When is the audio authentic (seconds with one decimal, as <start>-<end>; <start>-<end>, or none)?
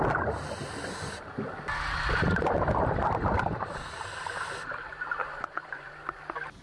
0.0-5.2; 5.9-6.6